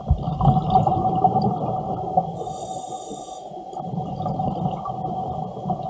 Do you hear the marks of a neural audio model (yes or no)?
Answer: no